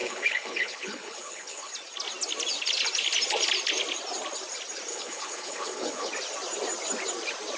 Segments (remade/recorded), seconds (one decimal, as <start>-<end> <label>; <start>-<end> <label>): 0.0-1.7 remade; 1.7-4.9 recorded; 4.9-6.1 remade; 6.1-7.6 recorded